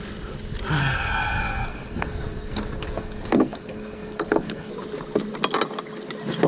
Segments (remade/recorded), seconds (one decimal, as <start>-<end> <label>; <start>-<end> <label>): 0.0-0.8 recorded; 0.8-4.7 remade; 4.7-6.5 recorded